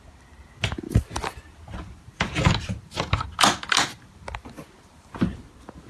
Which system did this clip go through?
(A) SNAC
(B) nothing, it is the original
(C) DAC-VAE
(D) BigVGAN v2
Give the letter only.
B